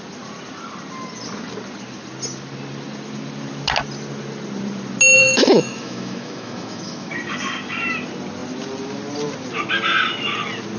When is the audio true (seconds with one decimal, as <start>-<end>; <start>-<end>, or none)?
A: 0.0-5.2; 7.1-10.8